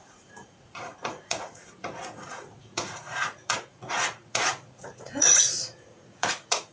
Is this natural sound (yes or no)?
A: no